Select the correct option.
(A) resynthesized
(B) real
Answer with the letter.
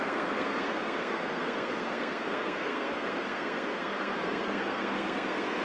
A